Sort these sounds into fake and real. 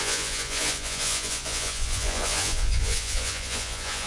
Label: fake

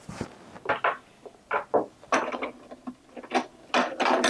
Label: real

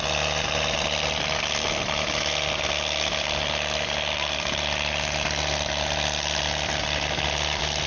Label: real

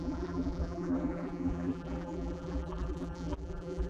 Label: fake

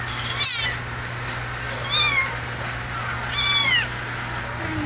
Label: real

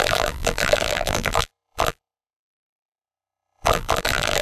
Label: fake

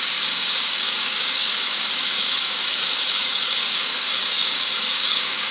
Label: fake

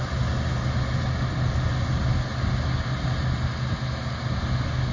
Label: real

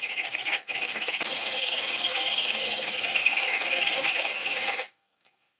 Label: fake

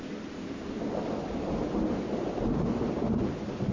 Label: real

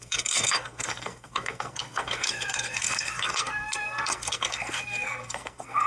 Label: fake